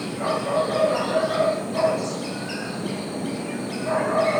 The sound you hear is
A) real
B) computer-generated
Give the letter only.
A